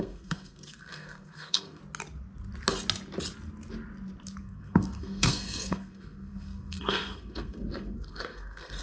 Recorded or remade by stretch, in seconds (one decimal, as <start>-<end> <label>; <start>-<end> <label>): 0.0-1.8 remade; 1.8-4.4 recorded; 4.4-8.8 remade